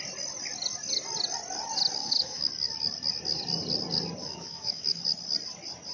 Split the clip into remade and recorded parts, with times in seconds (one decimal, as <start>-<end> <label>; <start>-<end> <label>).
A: 0.0-2.0 recorded; 2.0-2.5 remade; 2.5-4.2 recorded; 4.2-5.0 remade; 5.0-5.9 recorded